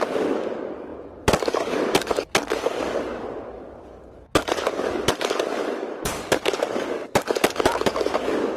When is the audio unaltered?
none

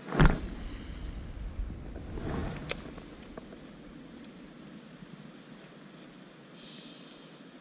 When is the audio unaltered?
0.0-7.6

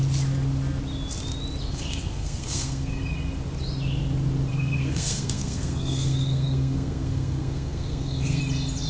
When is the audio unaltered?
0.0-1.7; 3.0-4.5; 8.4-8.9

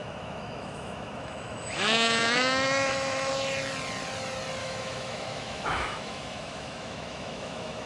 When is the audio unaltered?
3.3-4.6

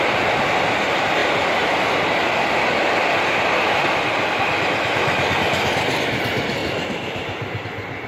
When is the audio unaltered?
0.0-6.6; 7.6-8.1

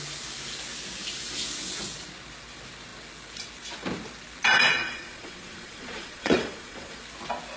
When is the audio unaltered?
0.0-4.7; 7.0-7.6

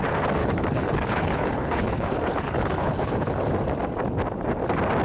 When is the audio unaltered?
0.0-0.4; 3.4-5.0